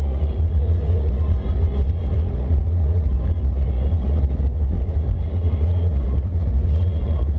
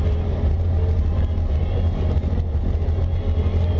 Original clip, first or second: second